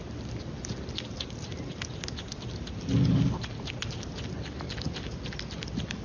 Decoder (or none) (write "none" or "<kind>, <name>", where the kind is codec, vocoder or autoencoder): none